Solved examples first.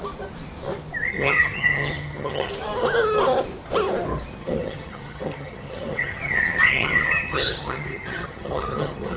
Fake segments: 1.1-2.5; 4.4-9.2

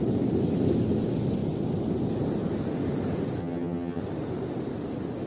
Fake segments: 3.4-4.0

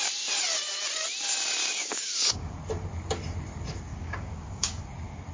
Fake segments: 1.6-2.5; 3.9-4.8

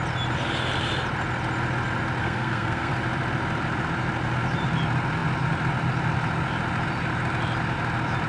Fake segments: 2.2-2.9

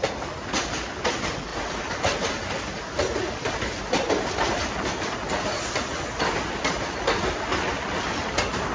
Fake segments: none

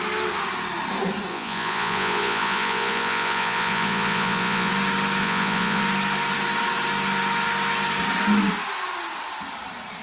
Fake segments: 1.3-4.7; 5.2-5.8

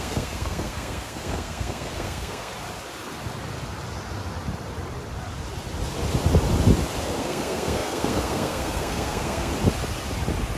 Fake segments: 0.0-2.5; 7.0-9.5

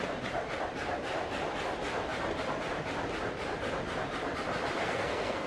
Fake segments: 4.8-5.5